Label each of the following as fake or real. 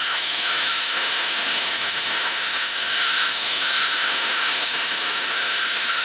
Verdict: fake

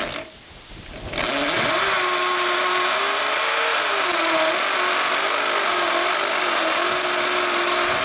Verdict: real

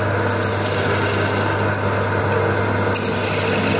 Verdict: real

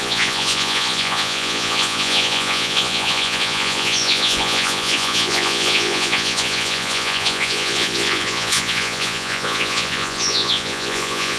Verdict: fake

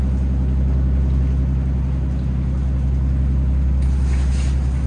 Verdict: real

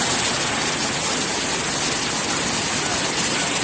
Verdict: real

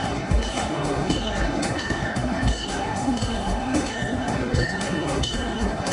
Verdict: fake